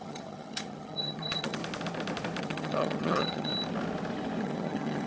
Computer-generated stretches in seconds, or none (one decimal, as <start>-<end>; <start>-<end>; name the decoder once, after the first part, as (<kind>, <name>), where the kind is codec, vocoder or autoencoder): 0.0-1.6 (vocoder, HiFi-GAN); 2.4-3.5; 4.4-5.1